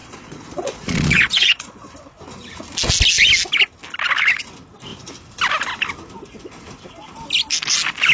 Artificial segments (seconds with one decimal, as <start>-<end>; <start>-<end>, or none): 0.0-1.9